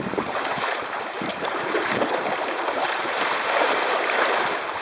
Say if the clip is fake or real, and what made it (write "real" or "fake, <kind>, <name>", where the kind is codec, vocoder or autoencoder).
fake, vocoder, BigVGAN v2